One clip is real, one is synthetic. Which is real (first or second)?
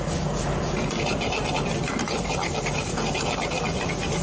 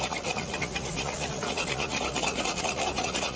first